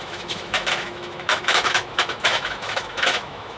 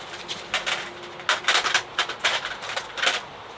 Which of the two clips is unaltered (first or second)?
second